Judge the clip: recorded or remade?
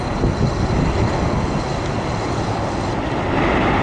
recorded